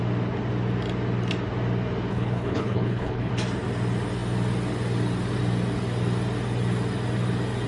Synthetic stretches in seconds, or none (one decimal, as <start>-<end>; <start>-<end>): 2.1-3.3